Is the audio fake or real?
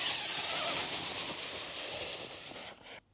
real